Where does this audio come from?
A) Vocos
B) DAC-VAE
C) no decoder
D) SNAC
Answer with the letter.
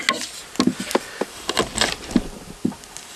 C